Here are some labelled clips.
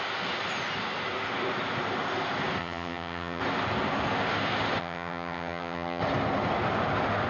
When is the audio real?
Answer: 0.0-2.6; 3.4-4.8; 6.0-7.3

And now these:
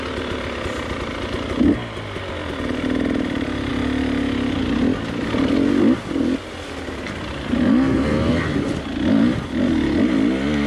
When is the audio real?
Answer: 0.0-10.7

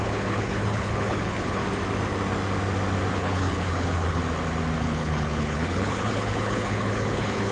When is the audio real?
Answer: 1.6-3.1; 4.2-4.8

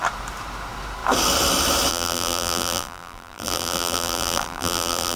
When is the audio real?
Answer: 0.0-1.9

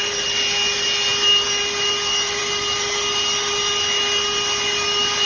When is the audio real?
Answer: 0.0-5.3

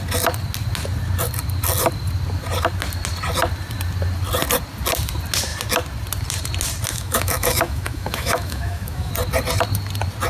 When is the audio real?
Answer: 0.0-6.9; 9.1-10.3